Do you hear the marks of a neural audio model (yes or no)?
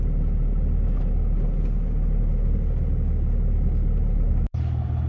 no